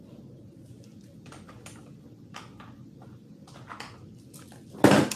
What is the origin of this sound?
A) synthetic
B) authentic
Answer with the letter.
B